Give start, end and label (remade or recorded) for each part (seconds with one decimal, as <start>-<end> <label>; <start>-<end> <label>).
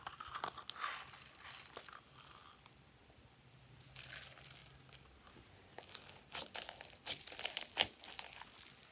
0.0-8.9 recorded